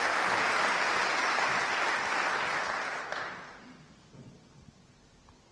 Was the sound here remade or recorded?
recorded